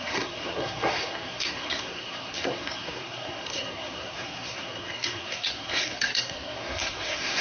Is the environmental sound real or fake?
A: fake